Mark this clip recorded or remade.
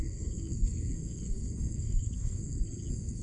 remade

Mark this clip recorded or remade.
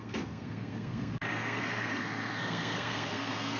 remade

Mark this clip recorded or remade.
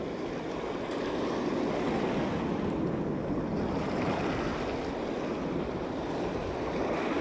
recorded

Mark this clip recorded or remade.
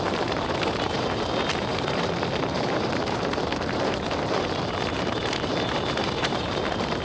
remade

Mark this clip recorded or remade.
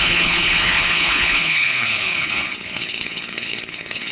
remade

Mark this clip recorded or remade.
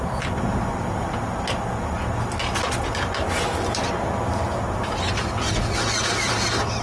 recorded